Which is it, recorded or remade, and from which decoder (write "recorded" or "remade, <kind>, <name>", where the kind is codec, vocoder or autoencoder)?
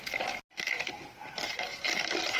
recorded